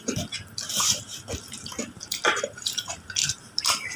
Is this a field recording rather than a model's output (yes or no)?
no